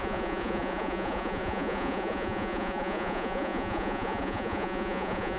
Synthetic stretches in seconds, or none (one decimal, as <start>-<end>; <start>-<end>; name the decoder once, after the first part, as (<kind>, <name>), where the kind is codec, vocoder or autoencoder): 0.0-5.4 (vocoder, Vocos)

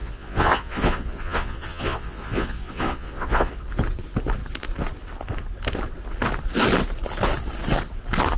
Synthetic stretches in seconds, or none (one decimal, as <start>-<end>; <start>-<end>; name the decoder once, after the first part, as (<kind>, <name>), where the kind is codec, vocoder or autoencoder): 0.0-3.6 (vocoder, Vocos)

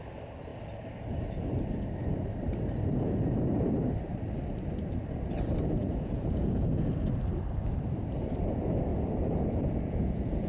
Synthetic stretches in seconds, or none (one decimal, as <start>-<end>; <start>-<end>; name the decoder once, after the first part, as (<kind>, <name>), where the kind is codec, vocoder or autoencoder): 5.8-6.9 (vocoder, Vocos); 8.9-10.5

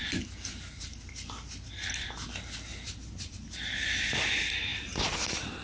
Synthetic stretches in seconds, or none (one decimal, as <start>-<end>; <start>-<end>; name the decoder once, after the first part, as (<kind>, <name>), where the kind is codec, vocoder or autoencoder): none

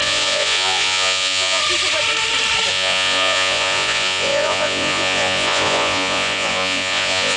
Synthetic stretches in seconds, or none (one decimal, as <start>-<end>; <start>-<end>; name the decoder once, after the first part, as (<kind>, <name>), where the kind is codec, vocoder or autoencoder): 0.0-1.6 (vocoder, Vocos); 2.7-7.4